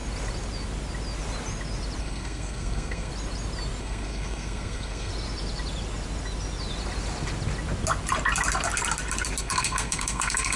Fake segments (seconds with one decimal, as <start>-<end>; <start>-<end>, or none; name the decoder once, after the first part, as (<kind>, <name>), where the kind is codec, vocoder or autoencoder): 2.0-3.1 (codec, SNAC); 3.8-5.1; 9.4-10.6